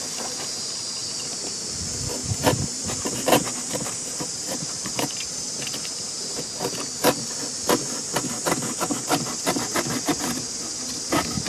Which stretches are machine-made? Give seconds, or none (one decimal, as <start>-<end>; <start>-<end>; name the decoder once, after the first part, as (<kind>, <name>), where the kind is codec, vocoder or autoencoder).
1.0-1.6 (vocoder, BigVGAN v2); 2.2-6.7